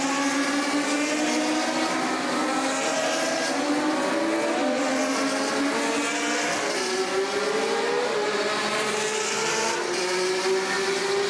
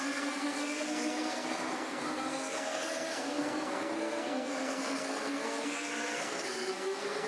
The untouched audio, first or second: first